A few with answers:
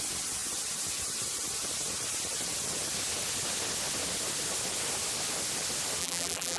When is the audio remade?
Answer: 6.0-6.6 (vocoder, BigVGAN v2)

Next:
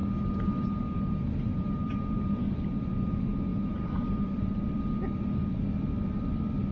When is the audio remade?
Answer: 1.5-2.0 (vocoder, BigVGAN v2); 3.5-4.8

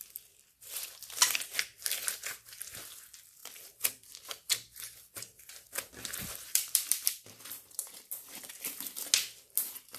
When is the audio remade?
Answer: 3.4-8.4 (vocoder, BigVGAN v2)

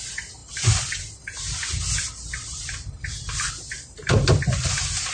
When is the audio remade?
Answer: none

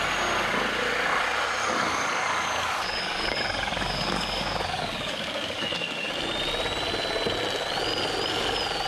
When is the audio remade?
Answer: 1.6-6.1 (codec, DAC)